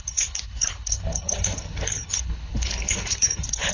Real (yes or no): no